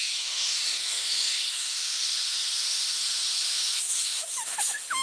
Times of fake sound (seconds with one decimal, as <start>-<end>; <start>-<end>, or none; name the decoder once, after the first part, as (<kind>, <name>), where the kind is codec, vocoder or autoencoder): 0.0-5.0 (autoencoder, DAC-VAE)